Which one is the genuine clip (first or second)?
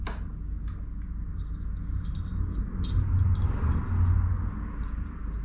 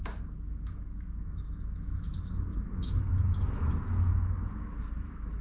first